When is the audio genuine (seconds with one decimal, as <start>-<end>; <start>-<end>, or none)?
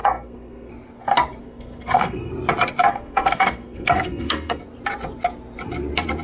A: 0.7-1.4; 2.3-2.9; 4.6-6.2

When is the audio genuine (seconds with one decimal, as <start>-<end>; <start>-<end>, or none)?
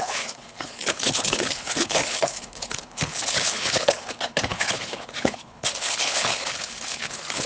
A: none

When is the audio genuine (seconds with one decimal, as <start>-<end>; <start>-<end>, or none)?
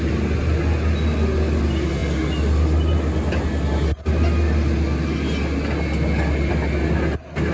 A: 0.0-7.5